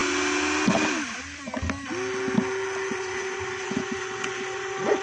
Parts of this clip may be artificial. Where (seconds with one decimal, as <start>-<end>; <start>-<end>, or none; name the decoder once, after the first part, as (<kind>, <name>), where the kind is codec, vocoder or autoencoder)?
2.9-5.0 (vocoder, Vocos)